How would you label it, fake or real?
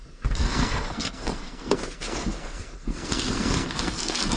fake